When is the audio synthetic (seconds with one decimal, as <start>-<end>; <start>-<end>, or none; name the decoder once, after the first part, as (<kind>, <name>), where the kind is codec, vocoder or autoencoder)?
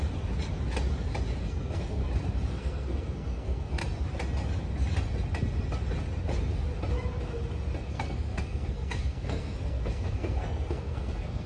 1.4-2.0 (codec, SNAC); 2.5-3.8; 7.9-11.5